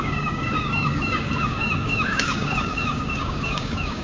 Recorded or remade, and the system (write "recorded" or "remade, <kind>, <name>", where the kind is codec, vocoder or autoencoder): remade, codec, DAC